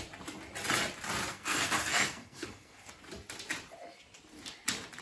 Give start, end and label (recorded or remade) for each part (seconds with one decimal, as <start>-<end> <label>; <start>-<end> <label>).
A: 0.0-1.3 recorded; 1.3-2.9 remade; 2.9-5.0 recorded